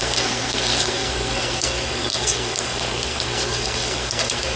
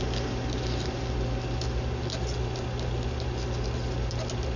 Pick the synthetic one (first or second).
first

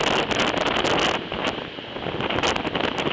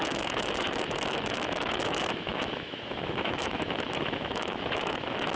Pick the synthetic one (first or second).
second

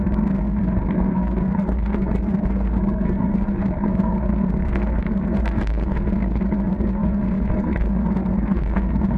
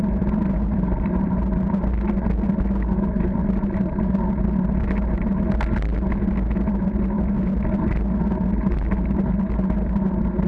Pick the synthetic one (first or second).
first